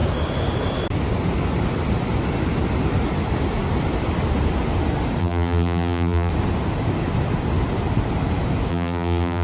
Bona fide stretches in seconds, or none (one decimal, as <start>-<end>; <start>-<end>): 0.0-5.2; 6.3-8.7